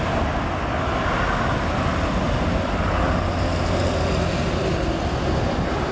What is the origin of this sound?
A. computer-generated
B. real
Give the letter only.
B